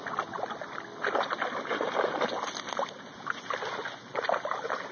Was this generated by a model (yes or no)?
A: no